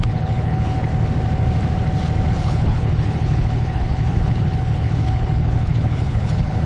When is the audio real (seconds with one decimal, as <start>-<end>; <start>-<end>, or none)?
0.9-2.3